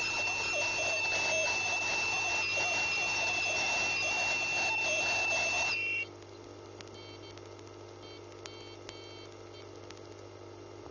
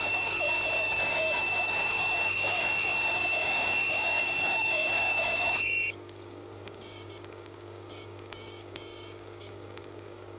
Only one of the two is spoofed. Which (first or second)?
second